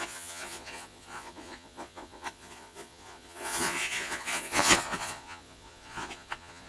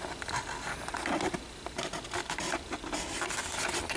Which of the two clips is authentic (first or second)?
second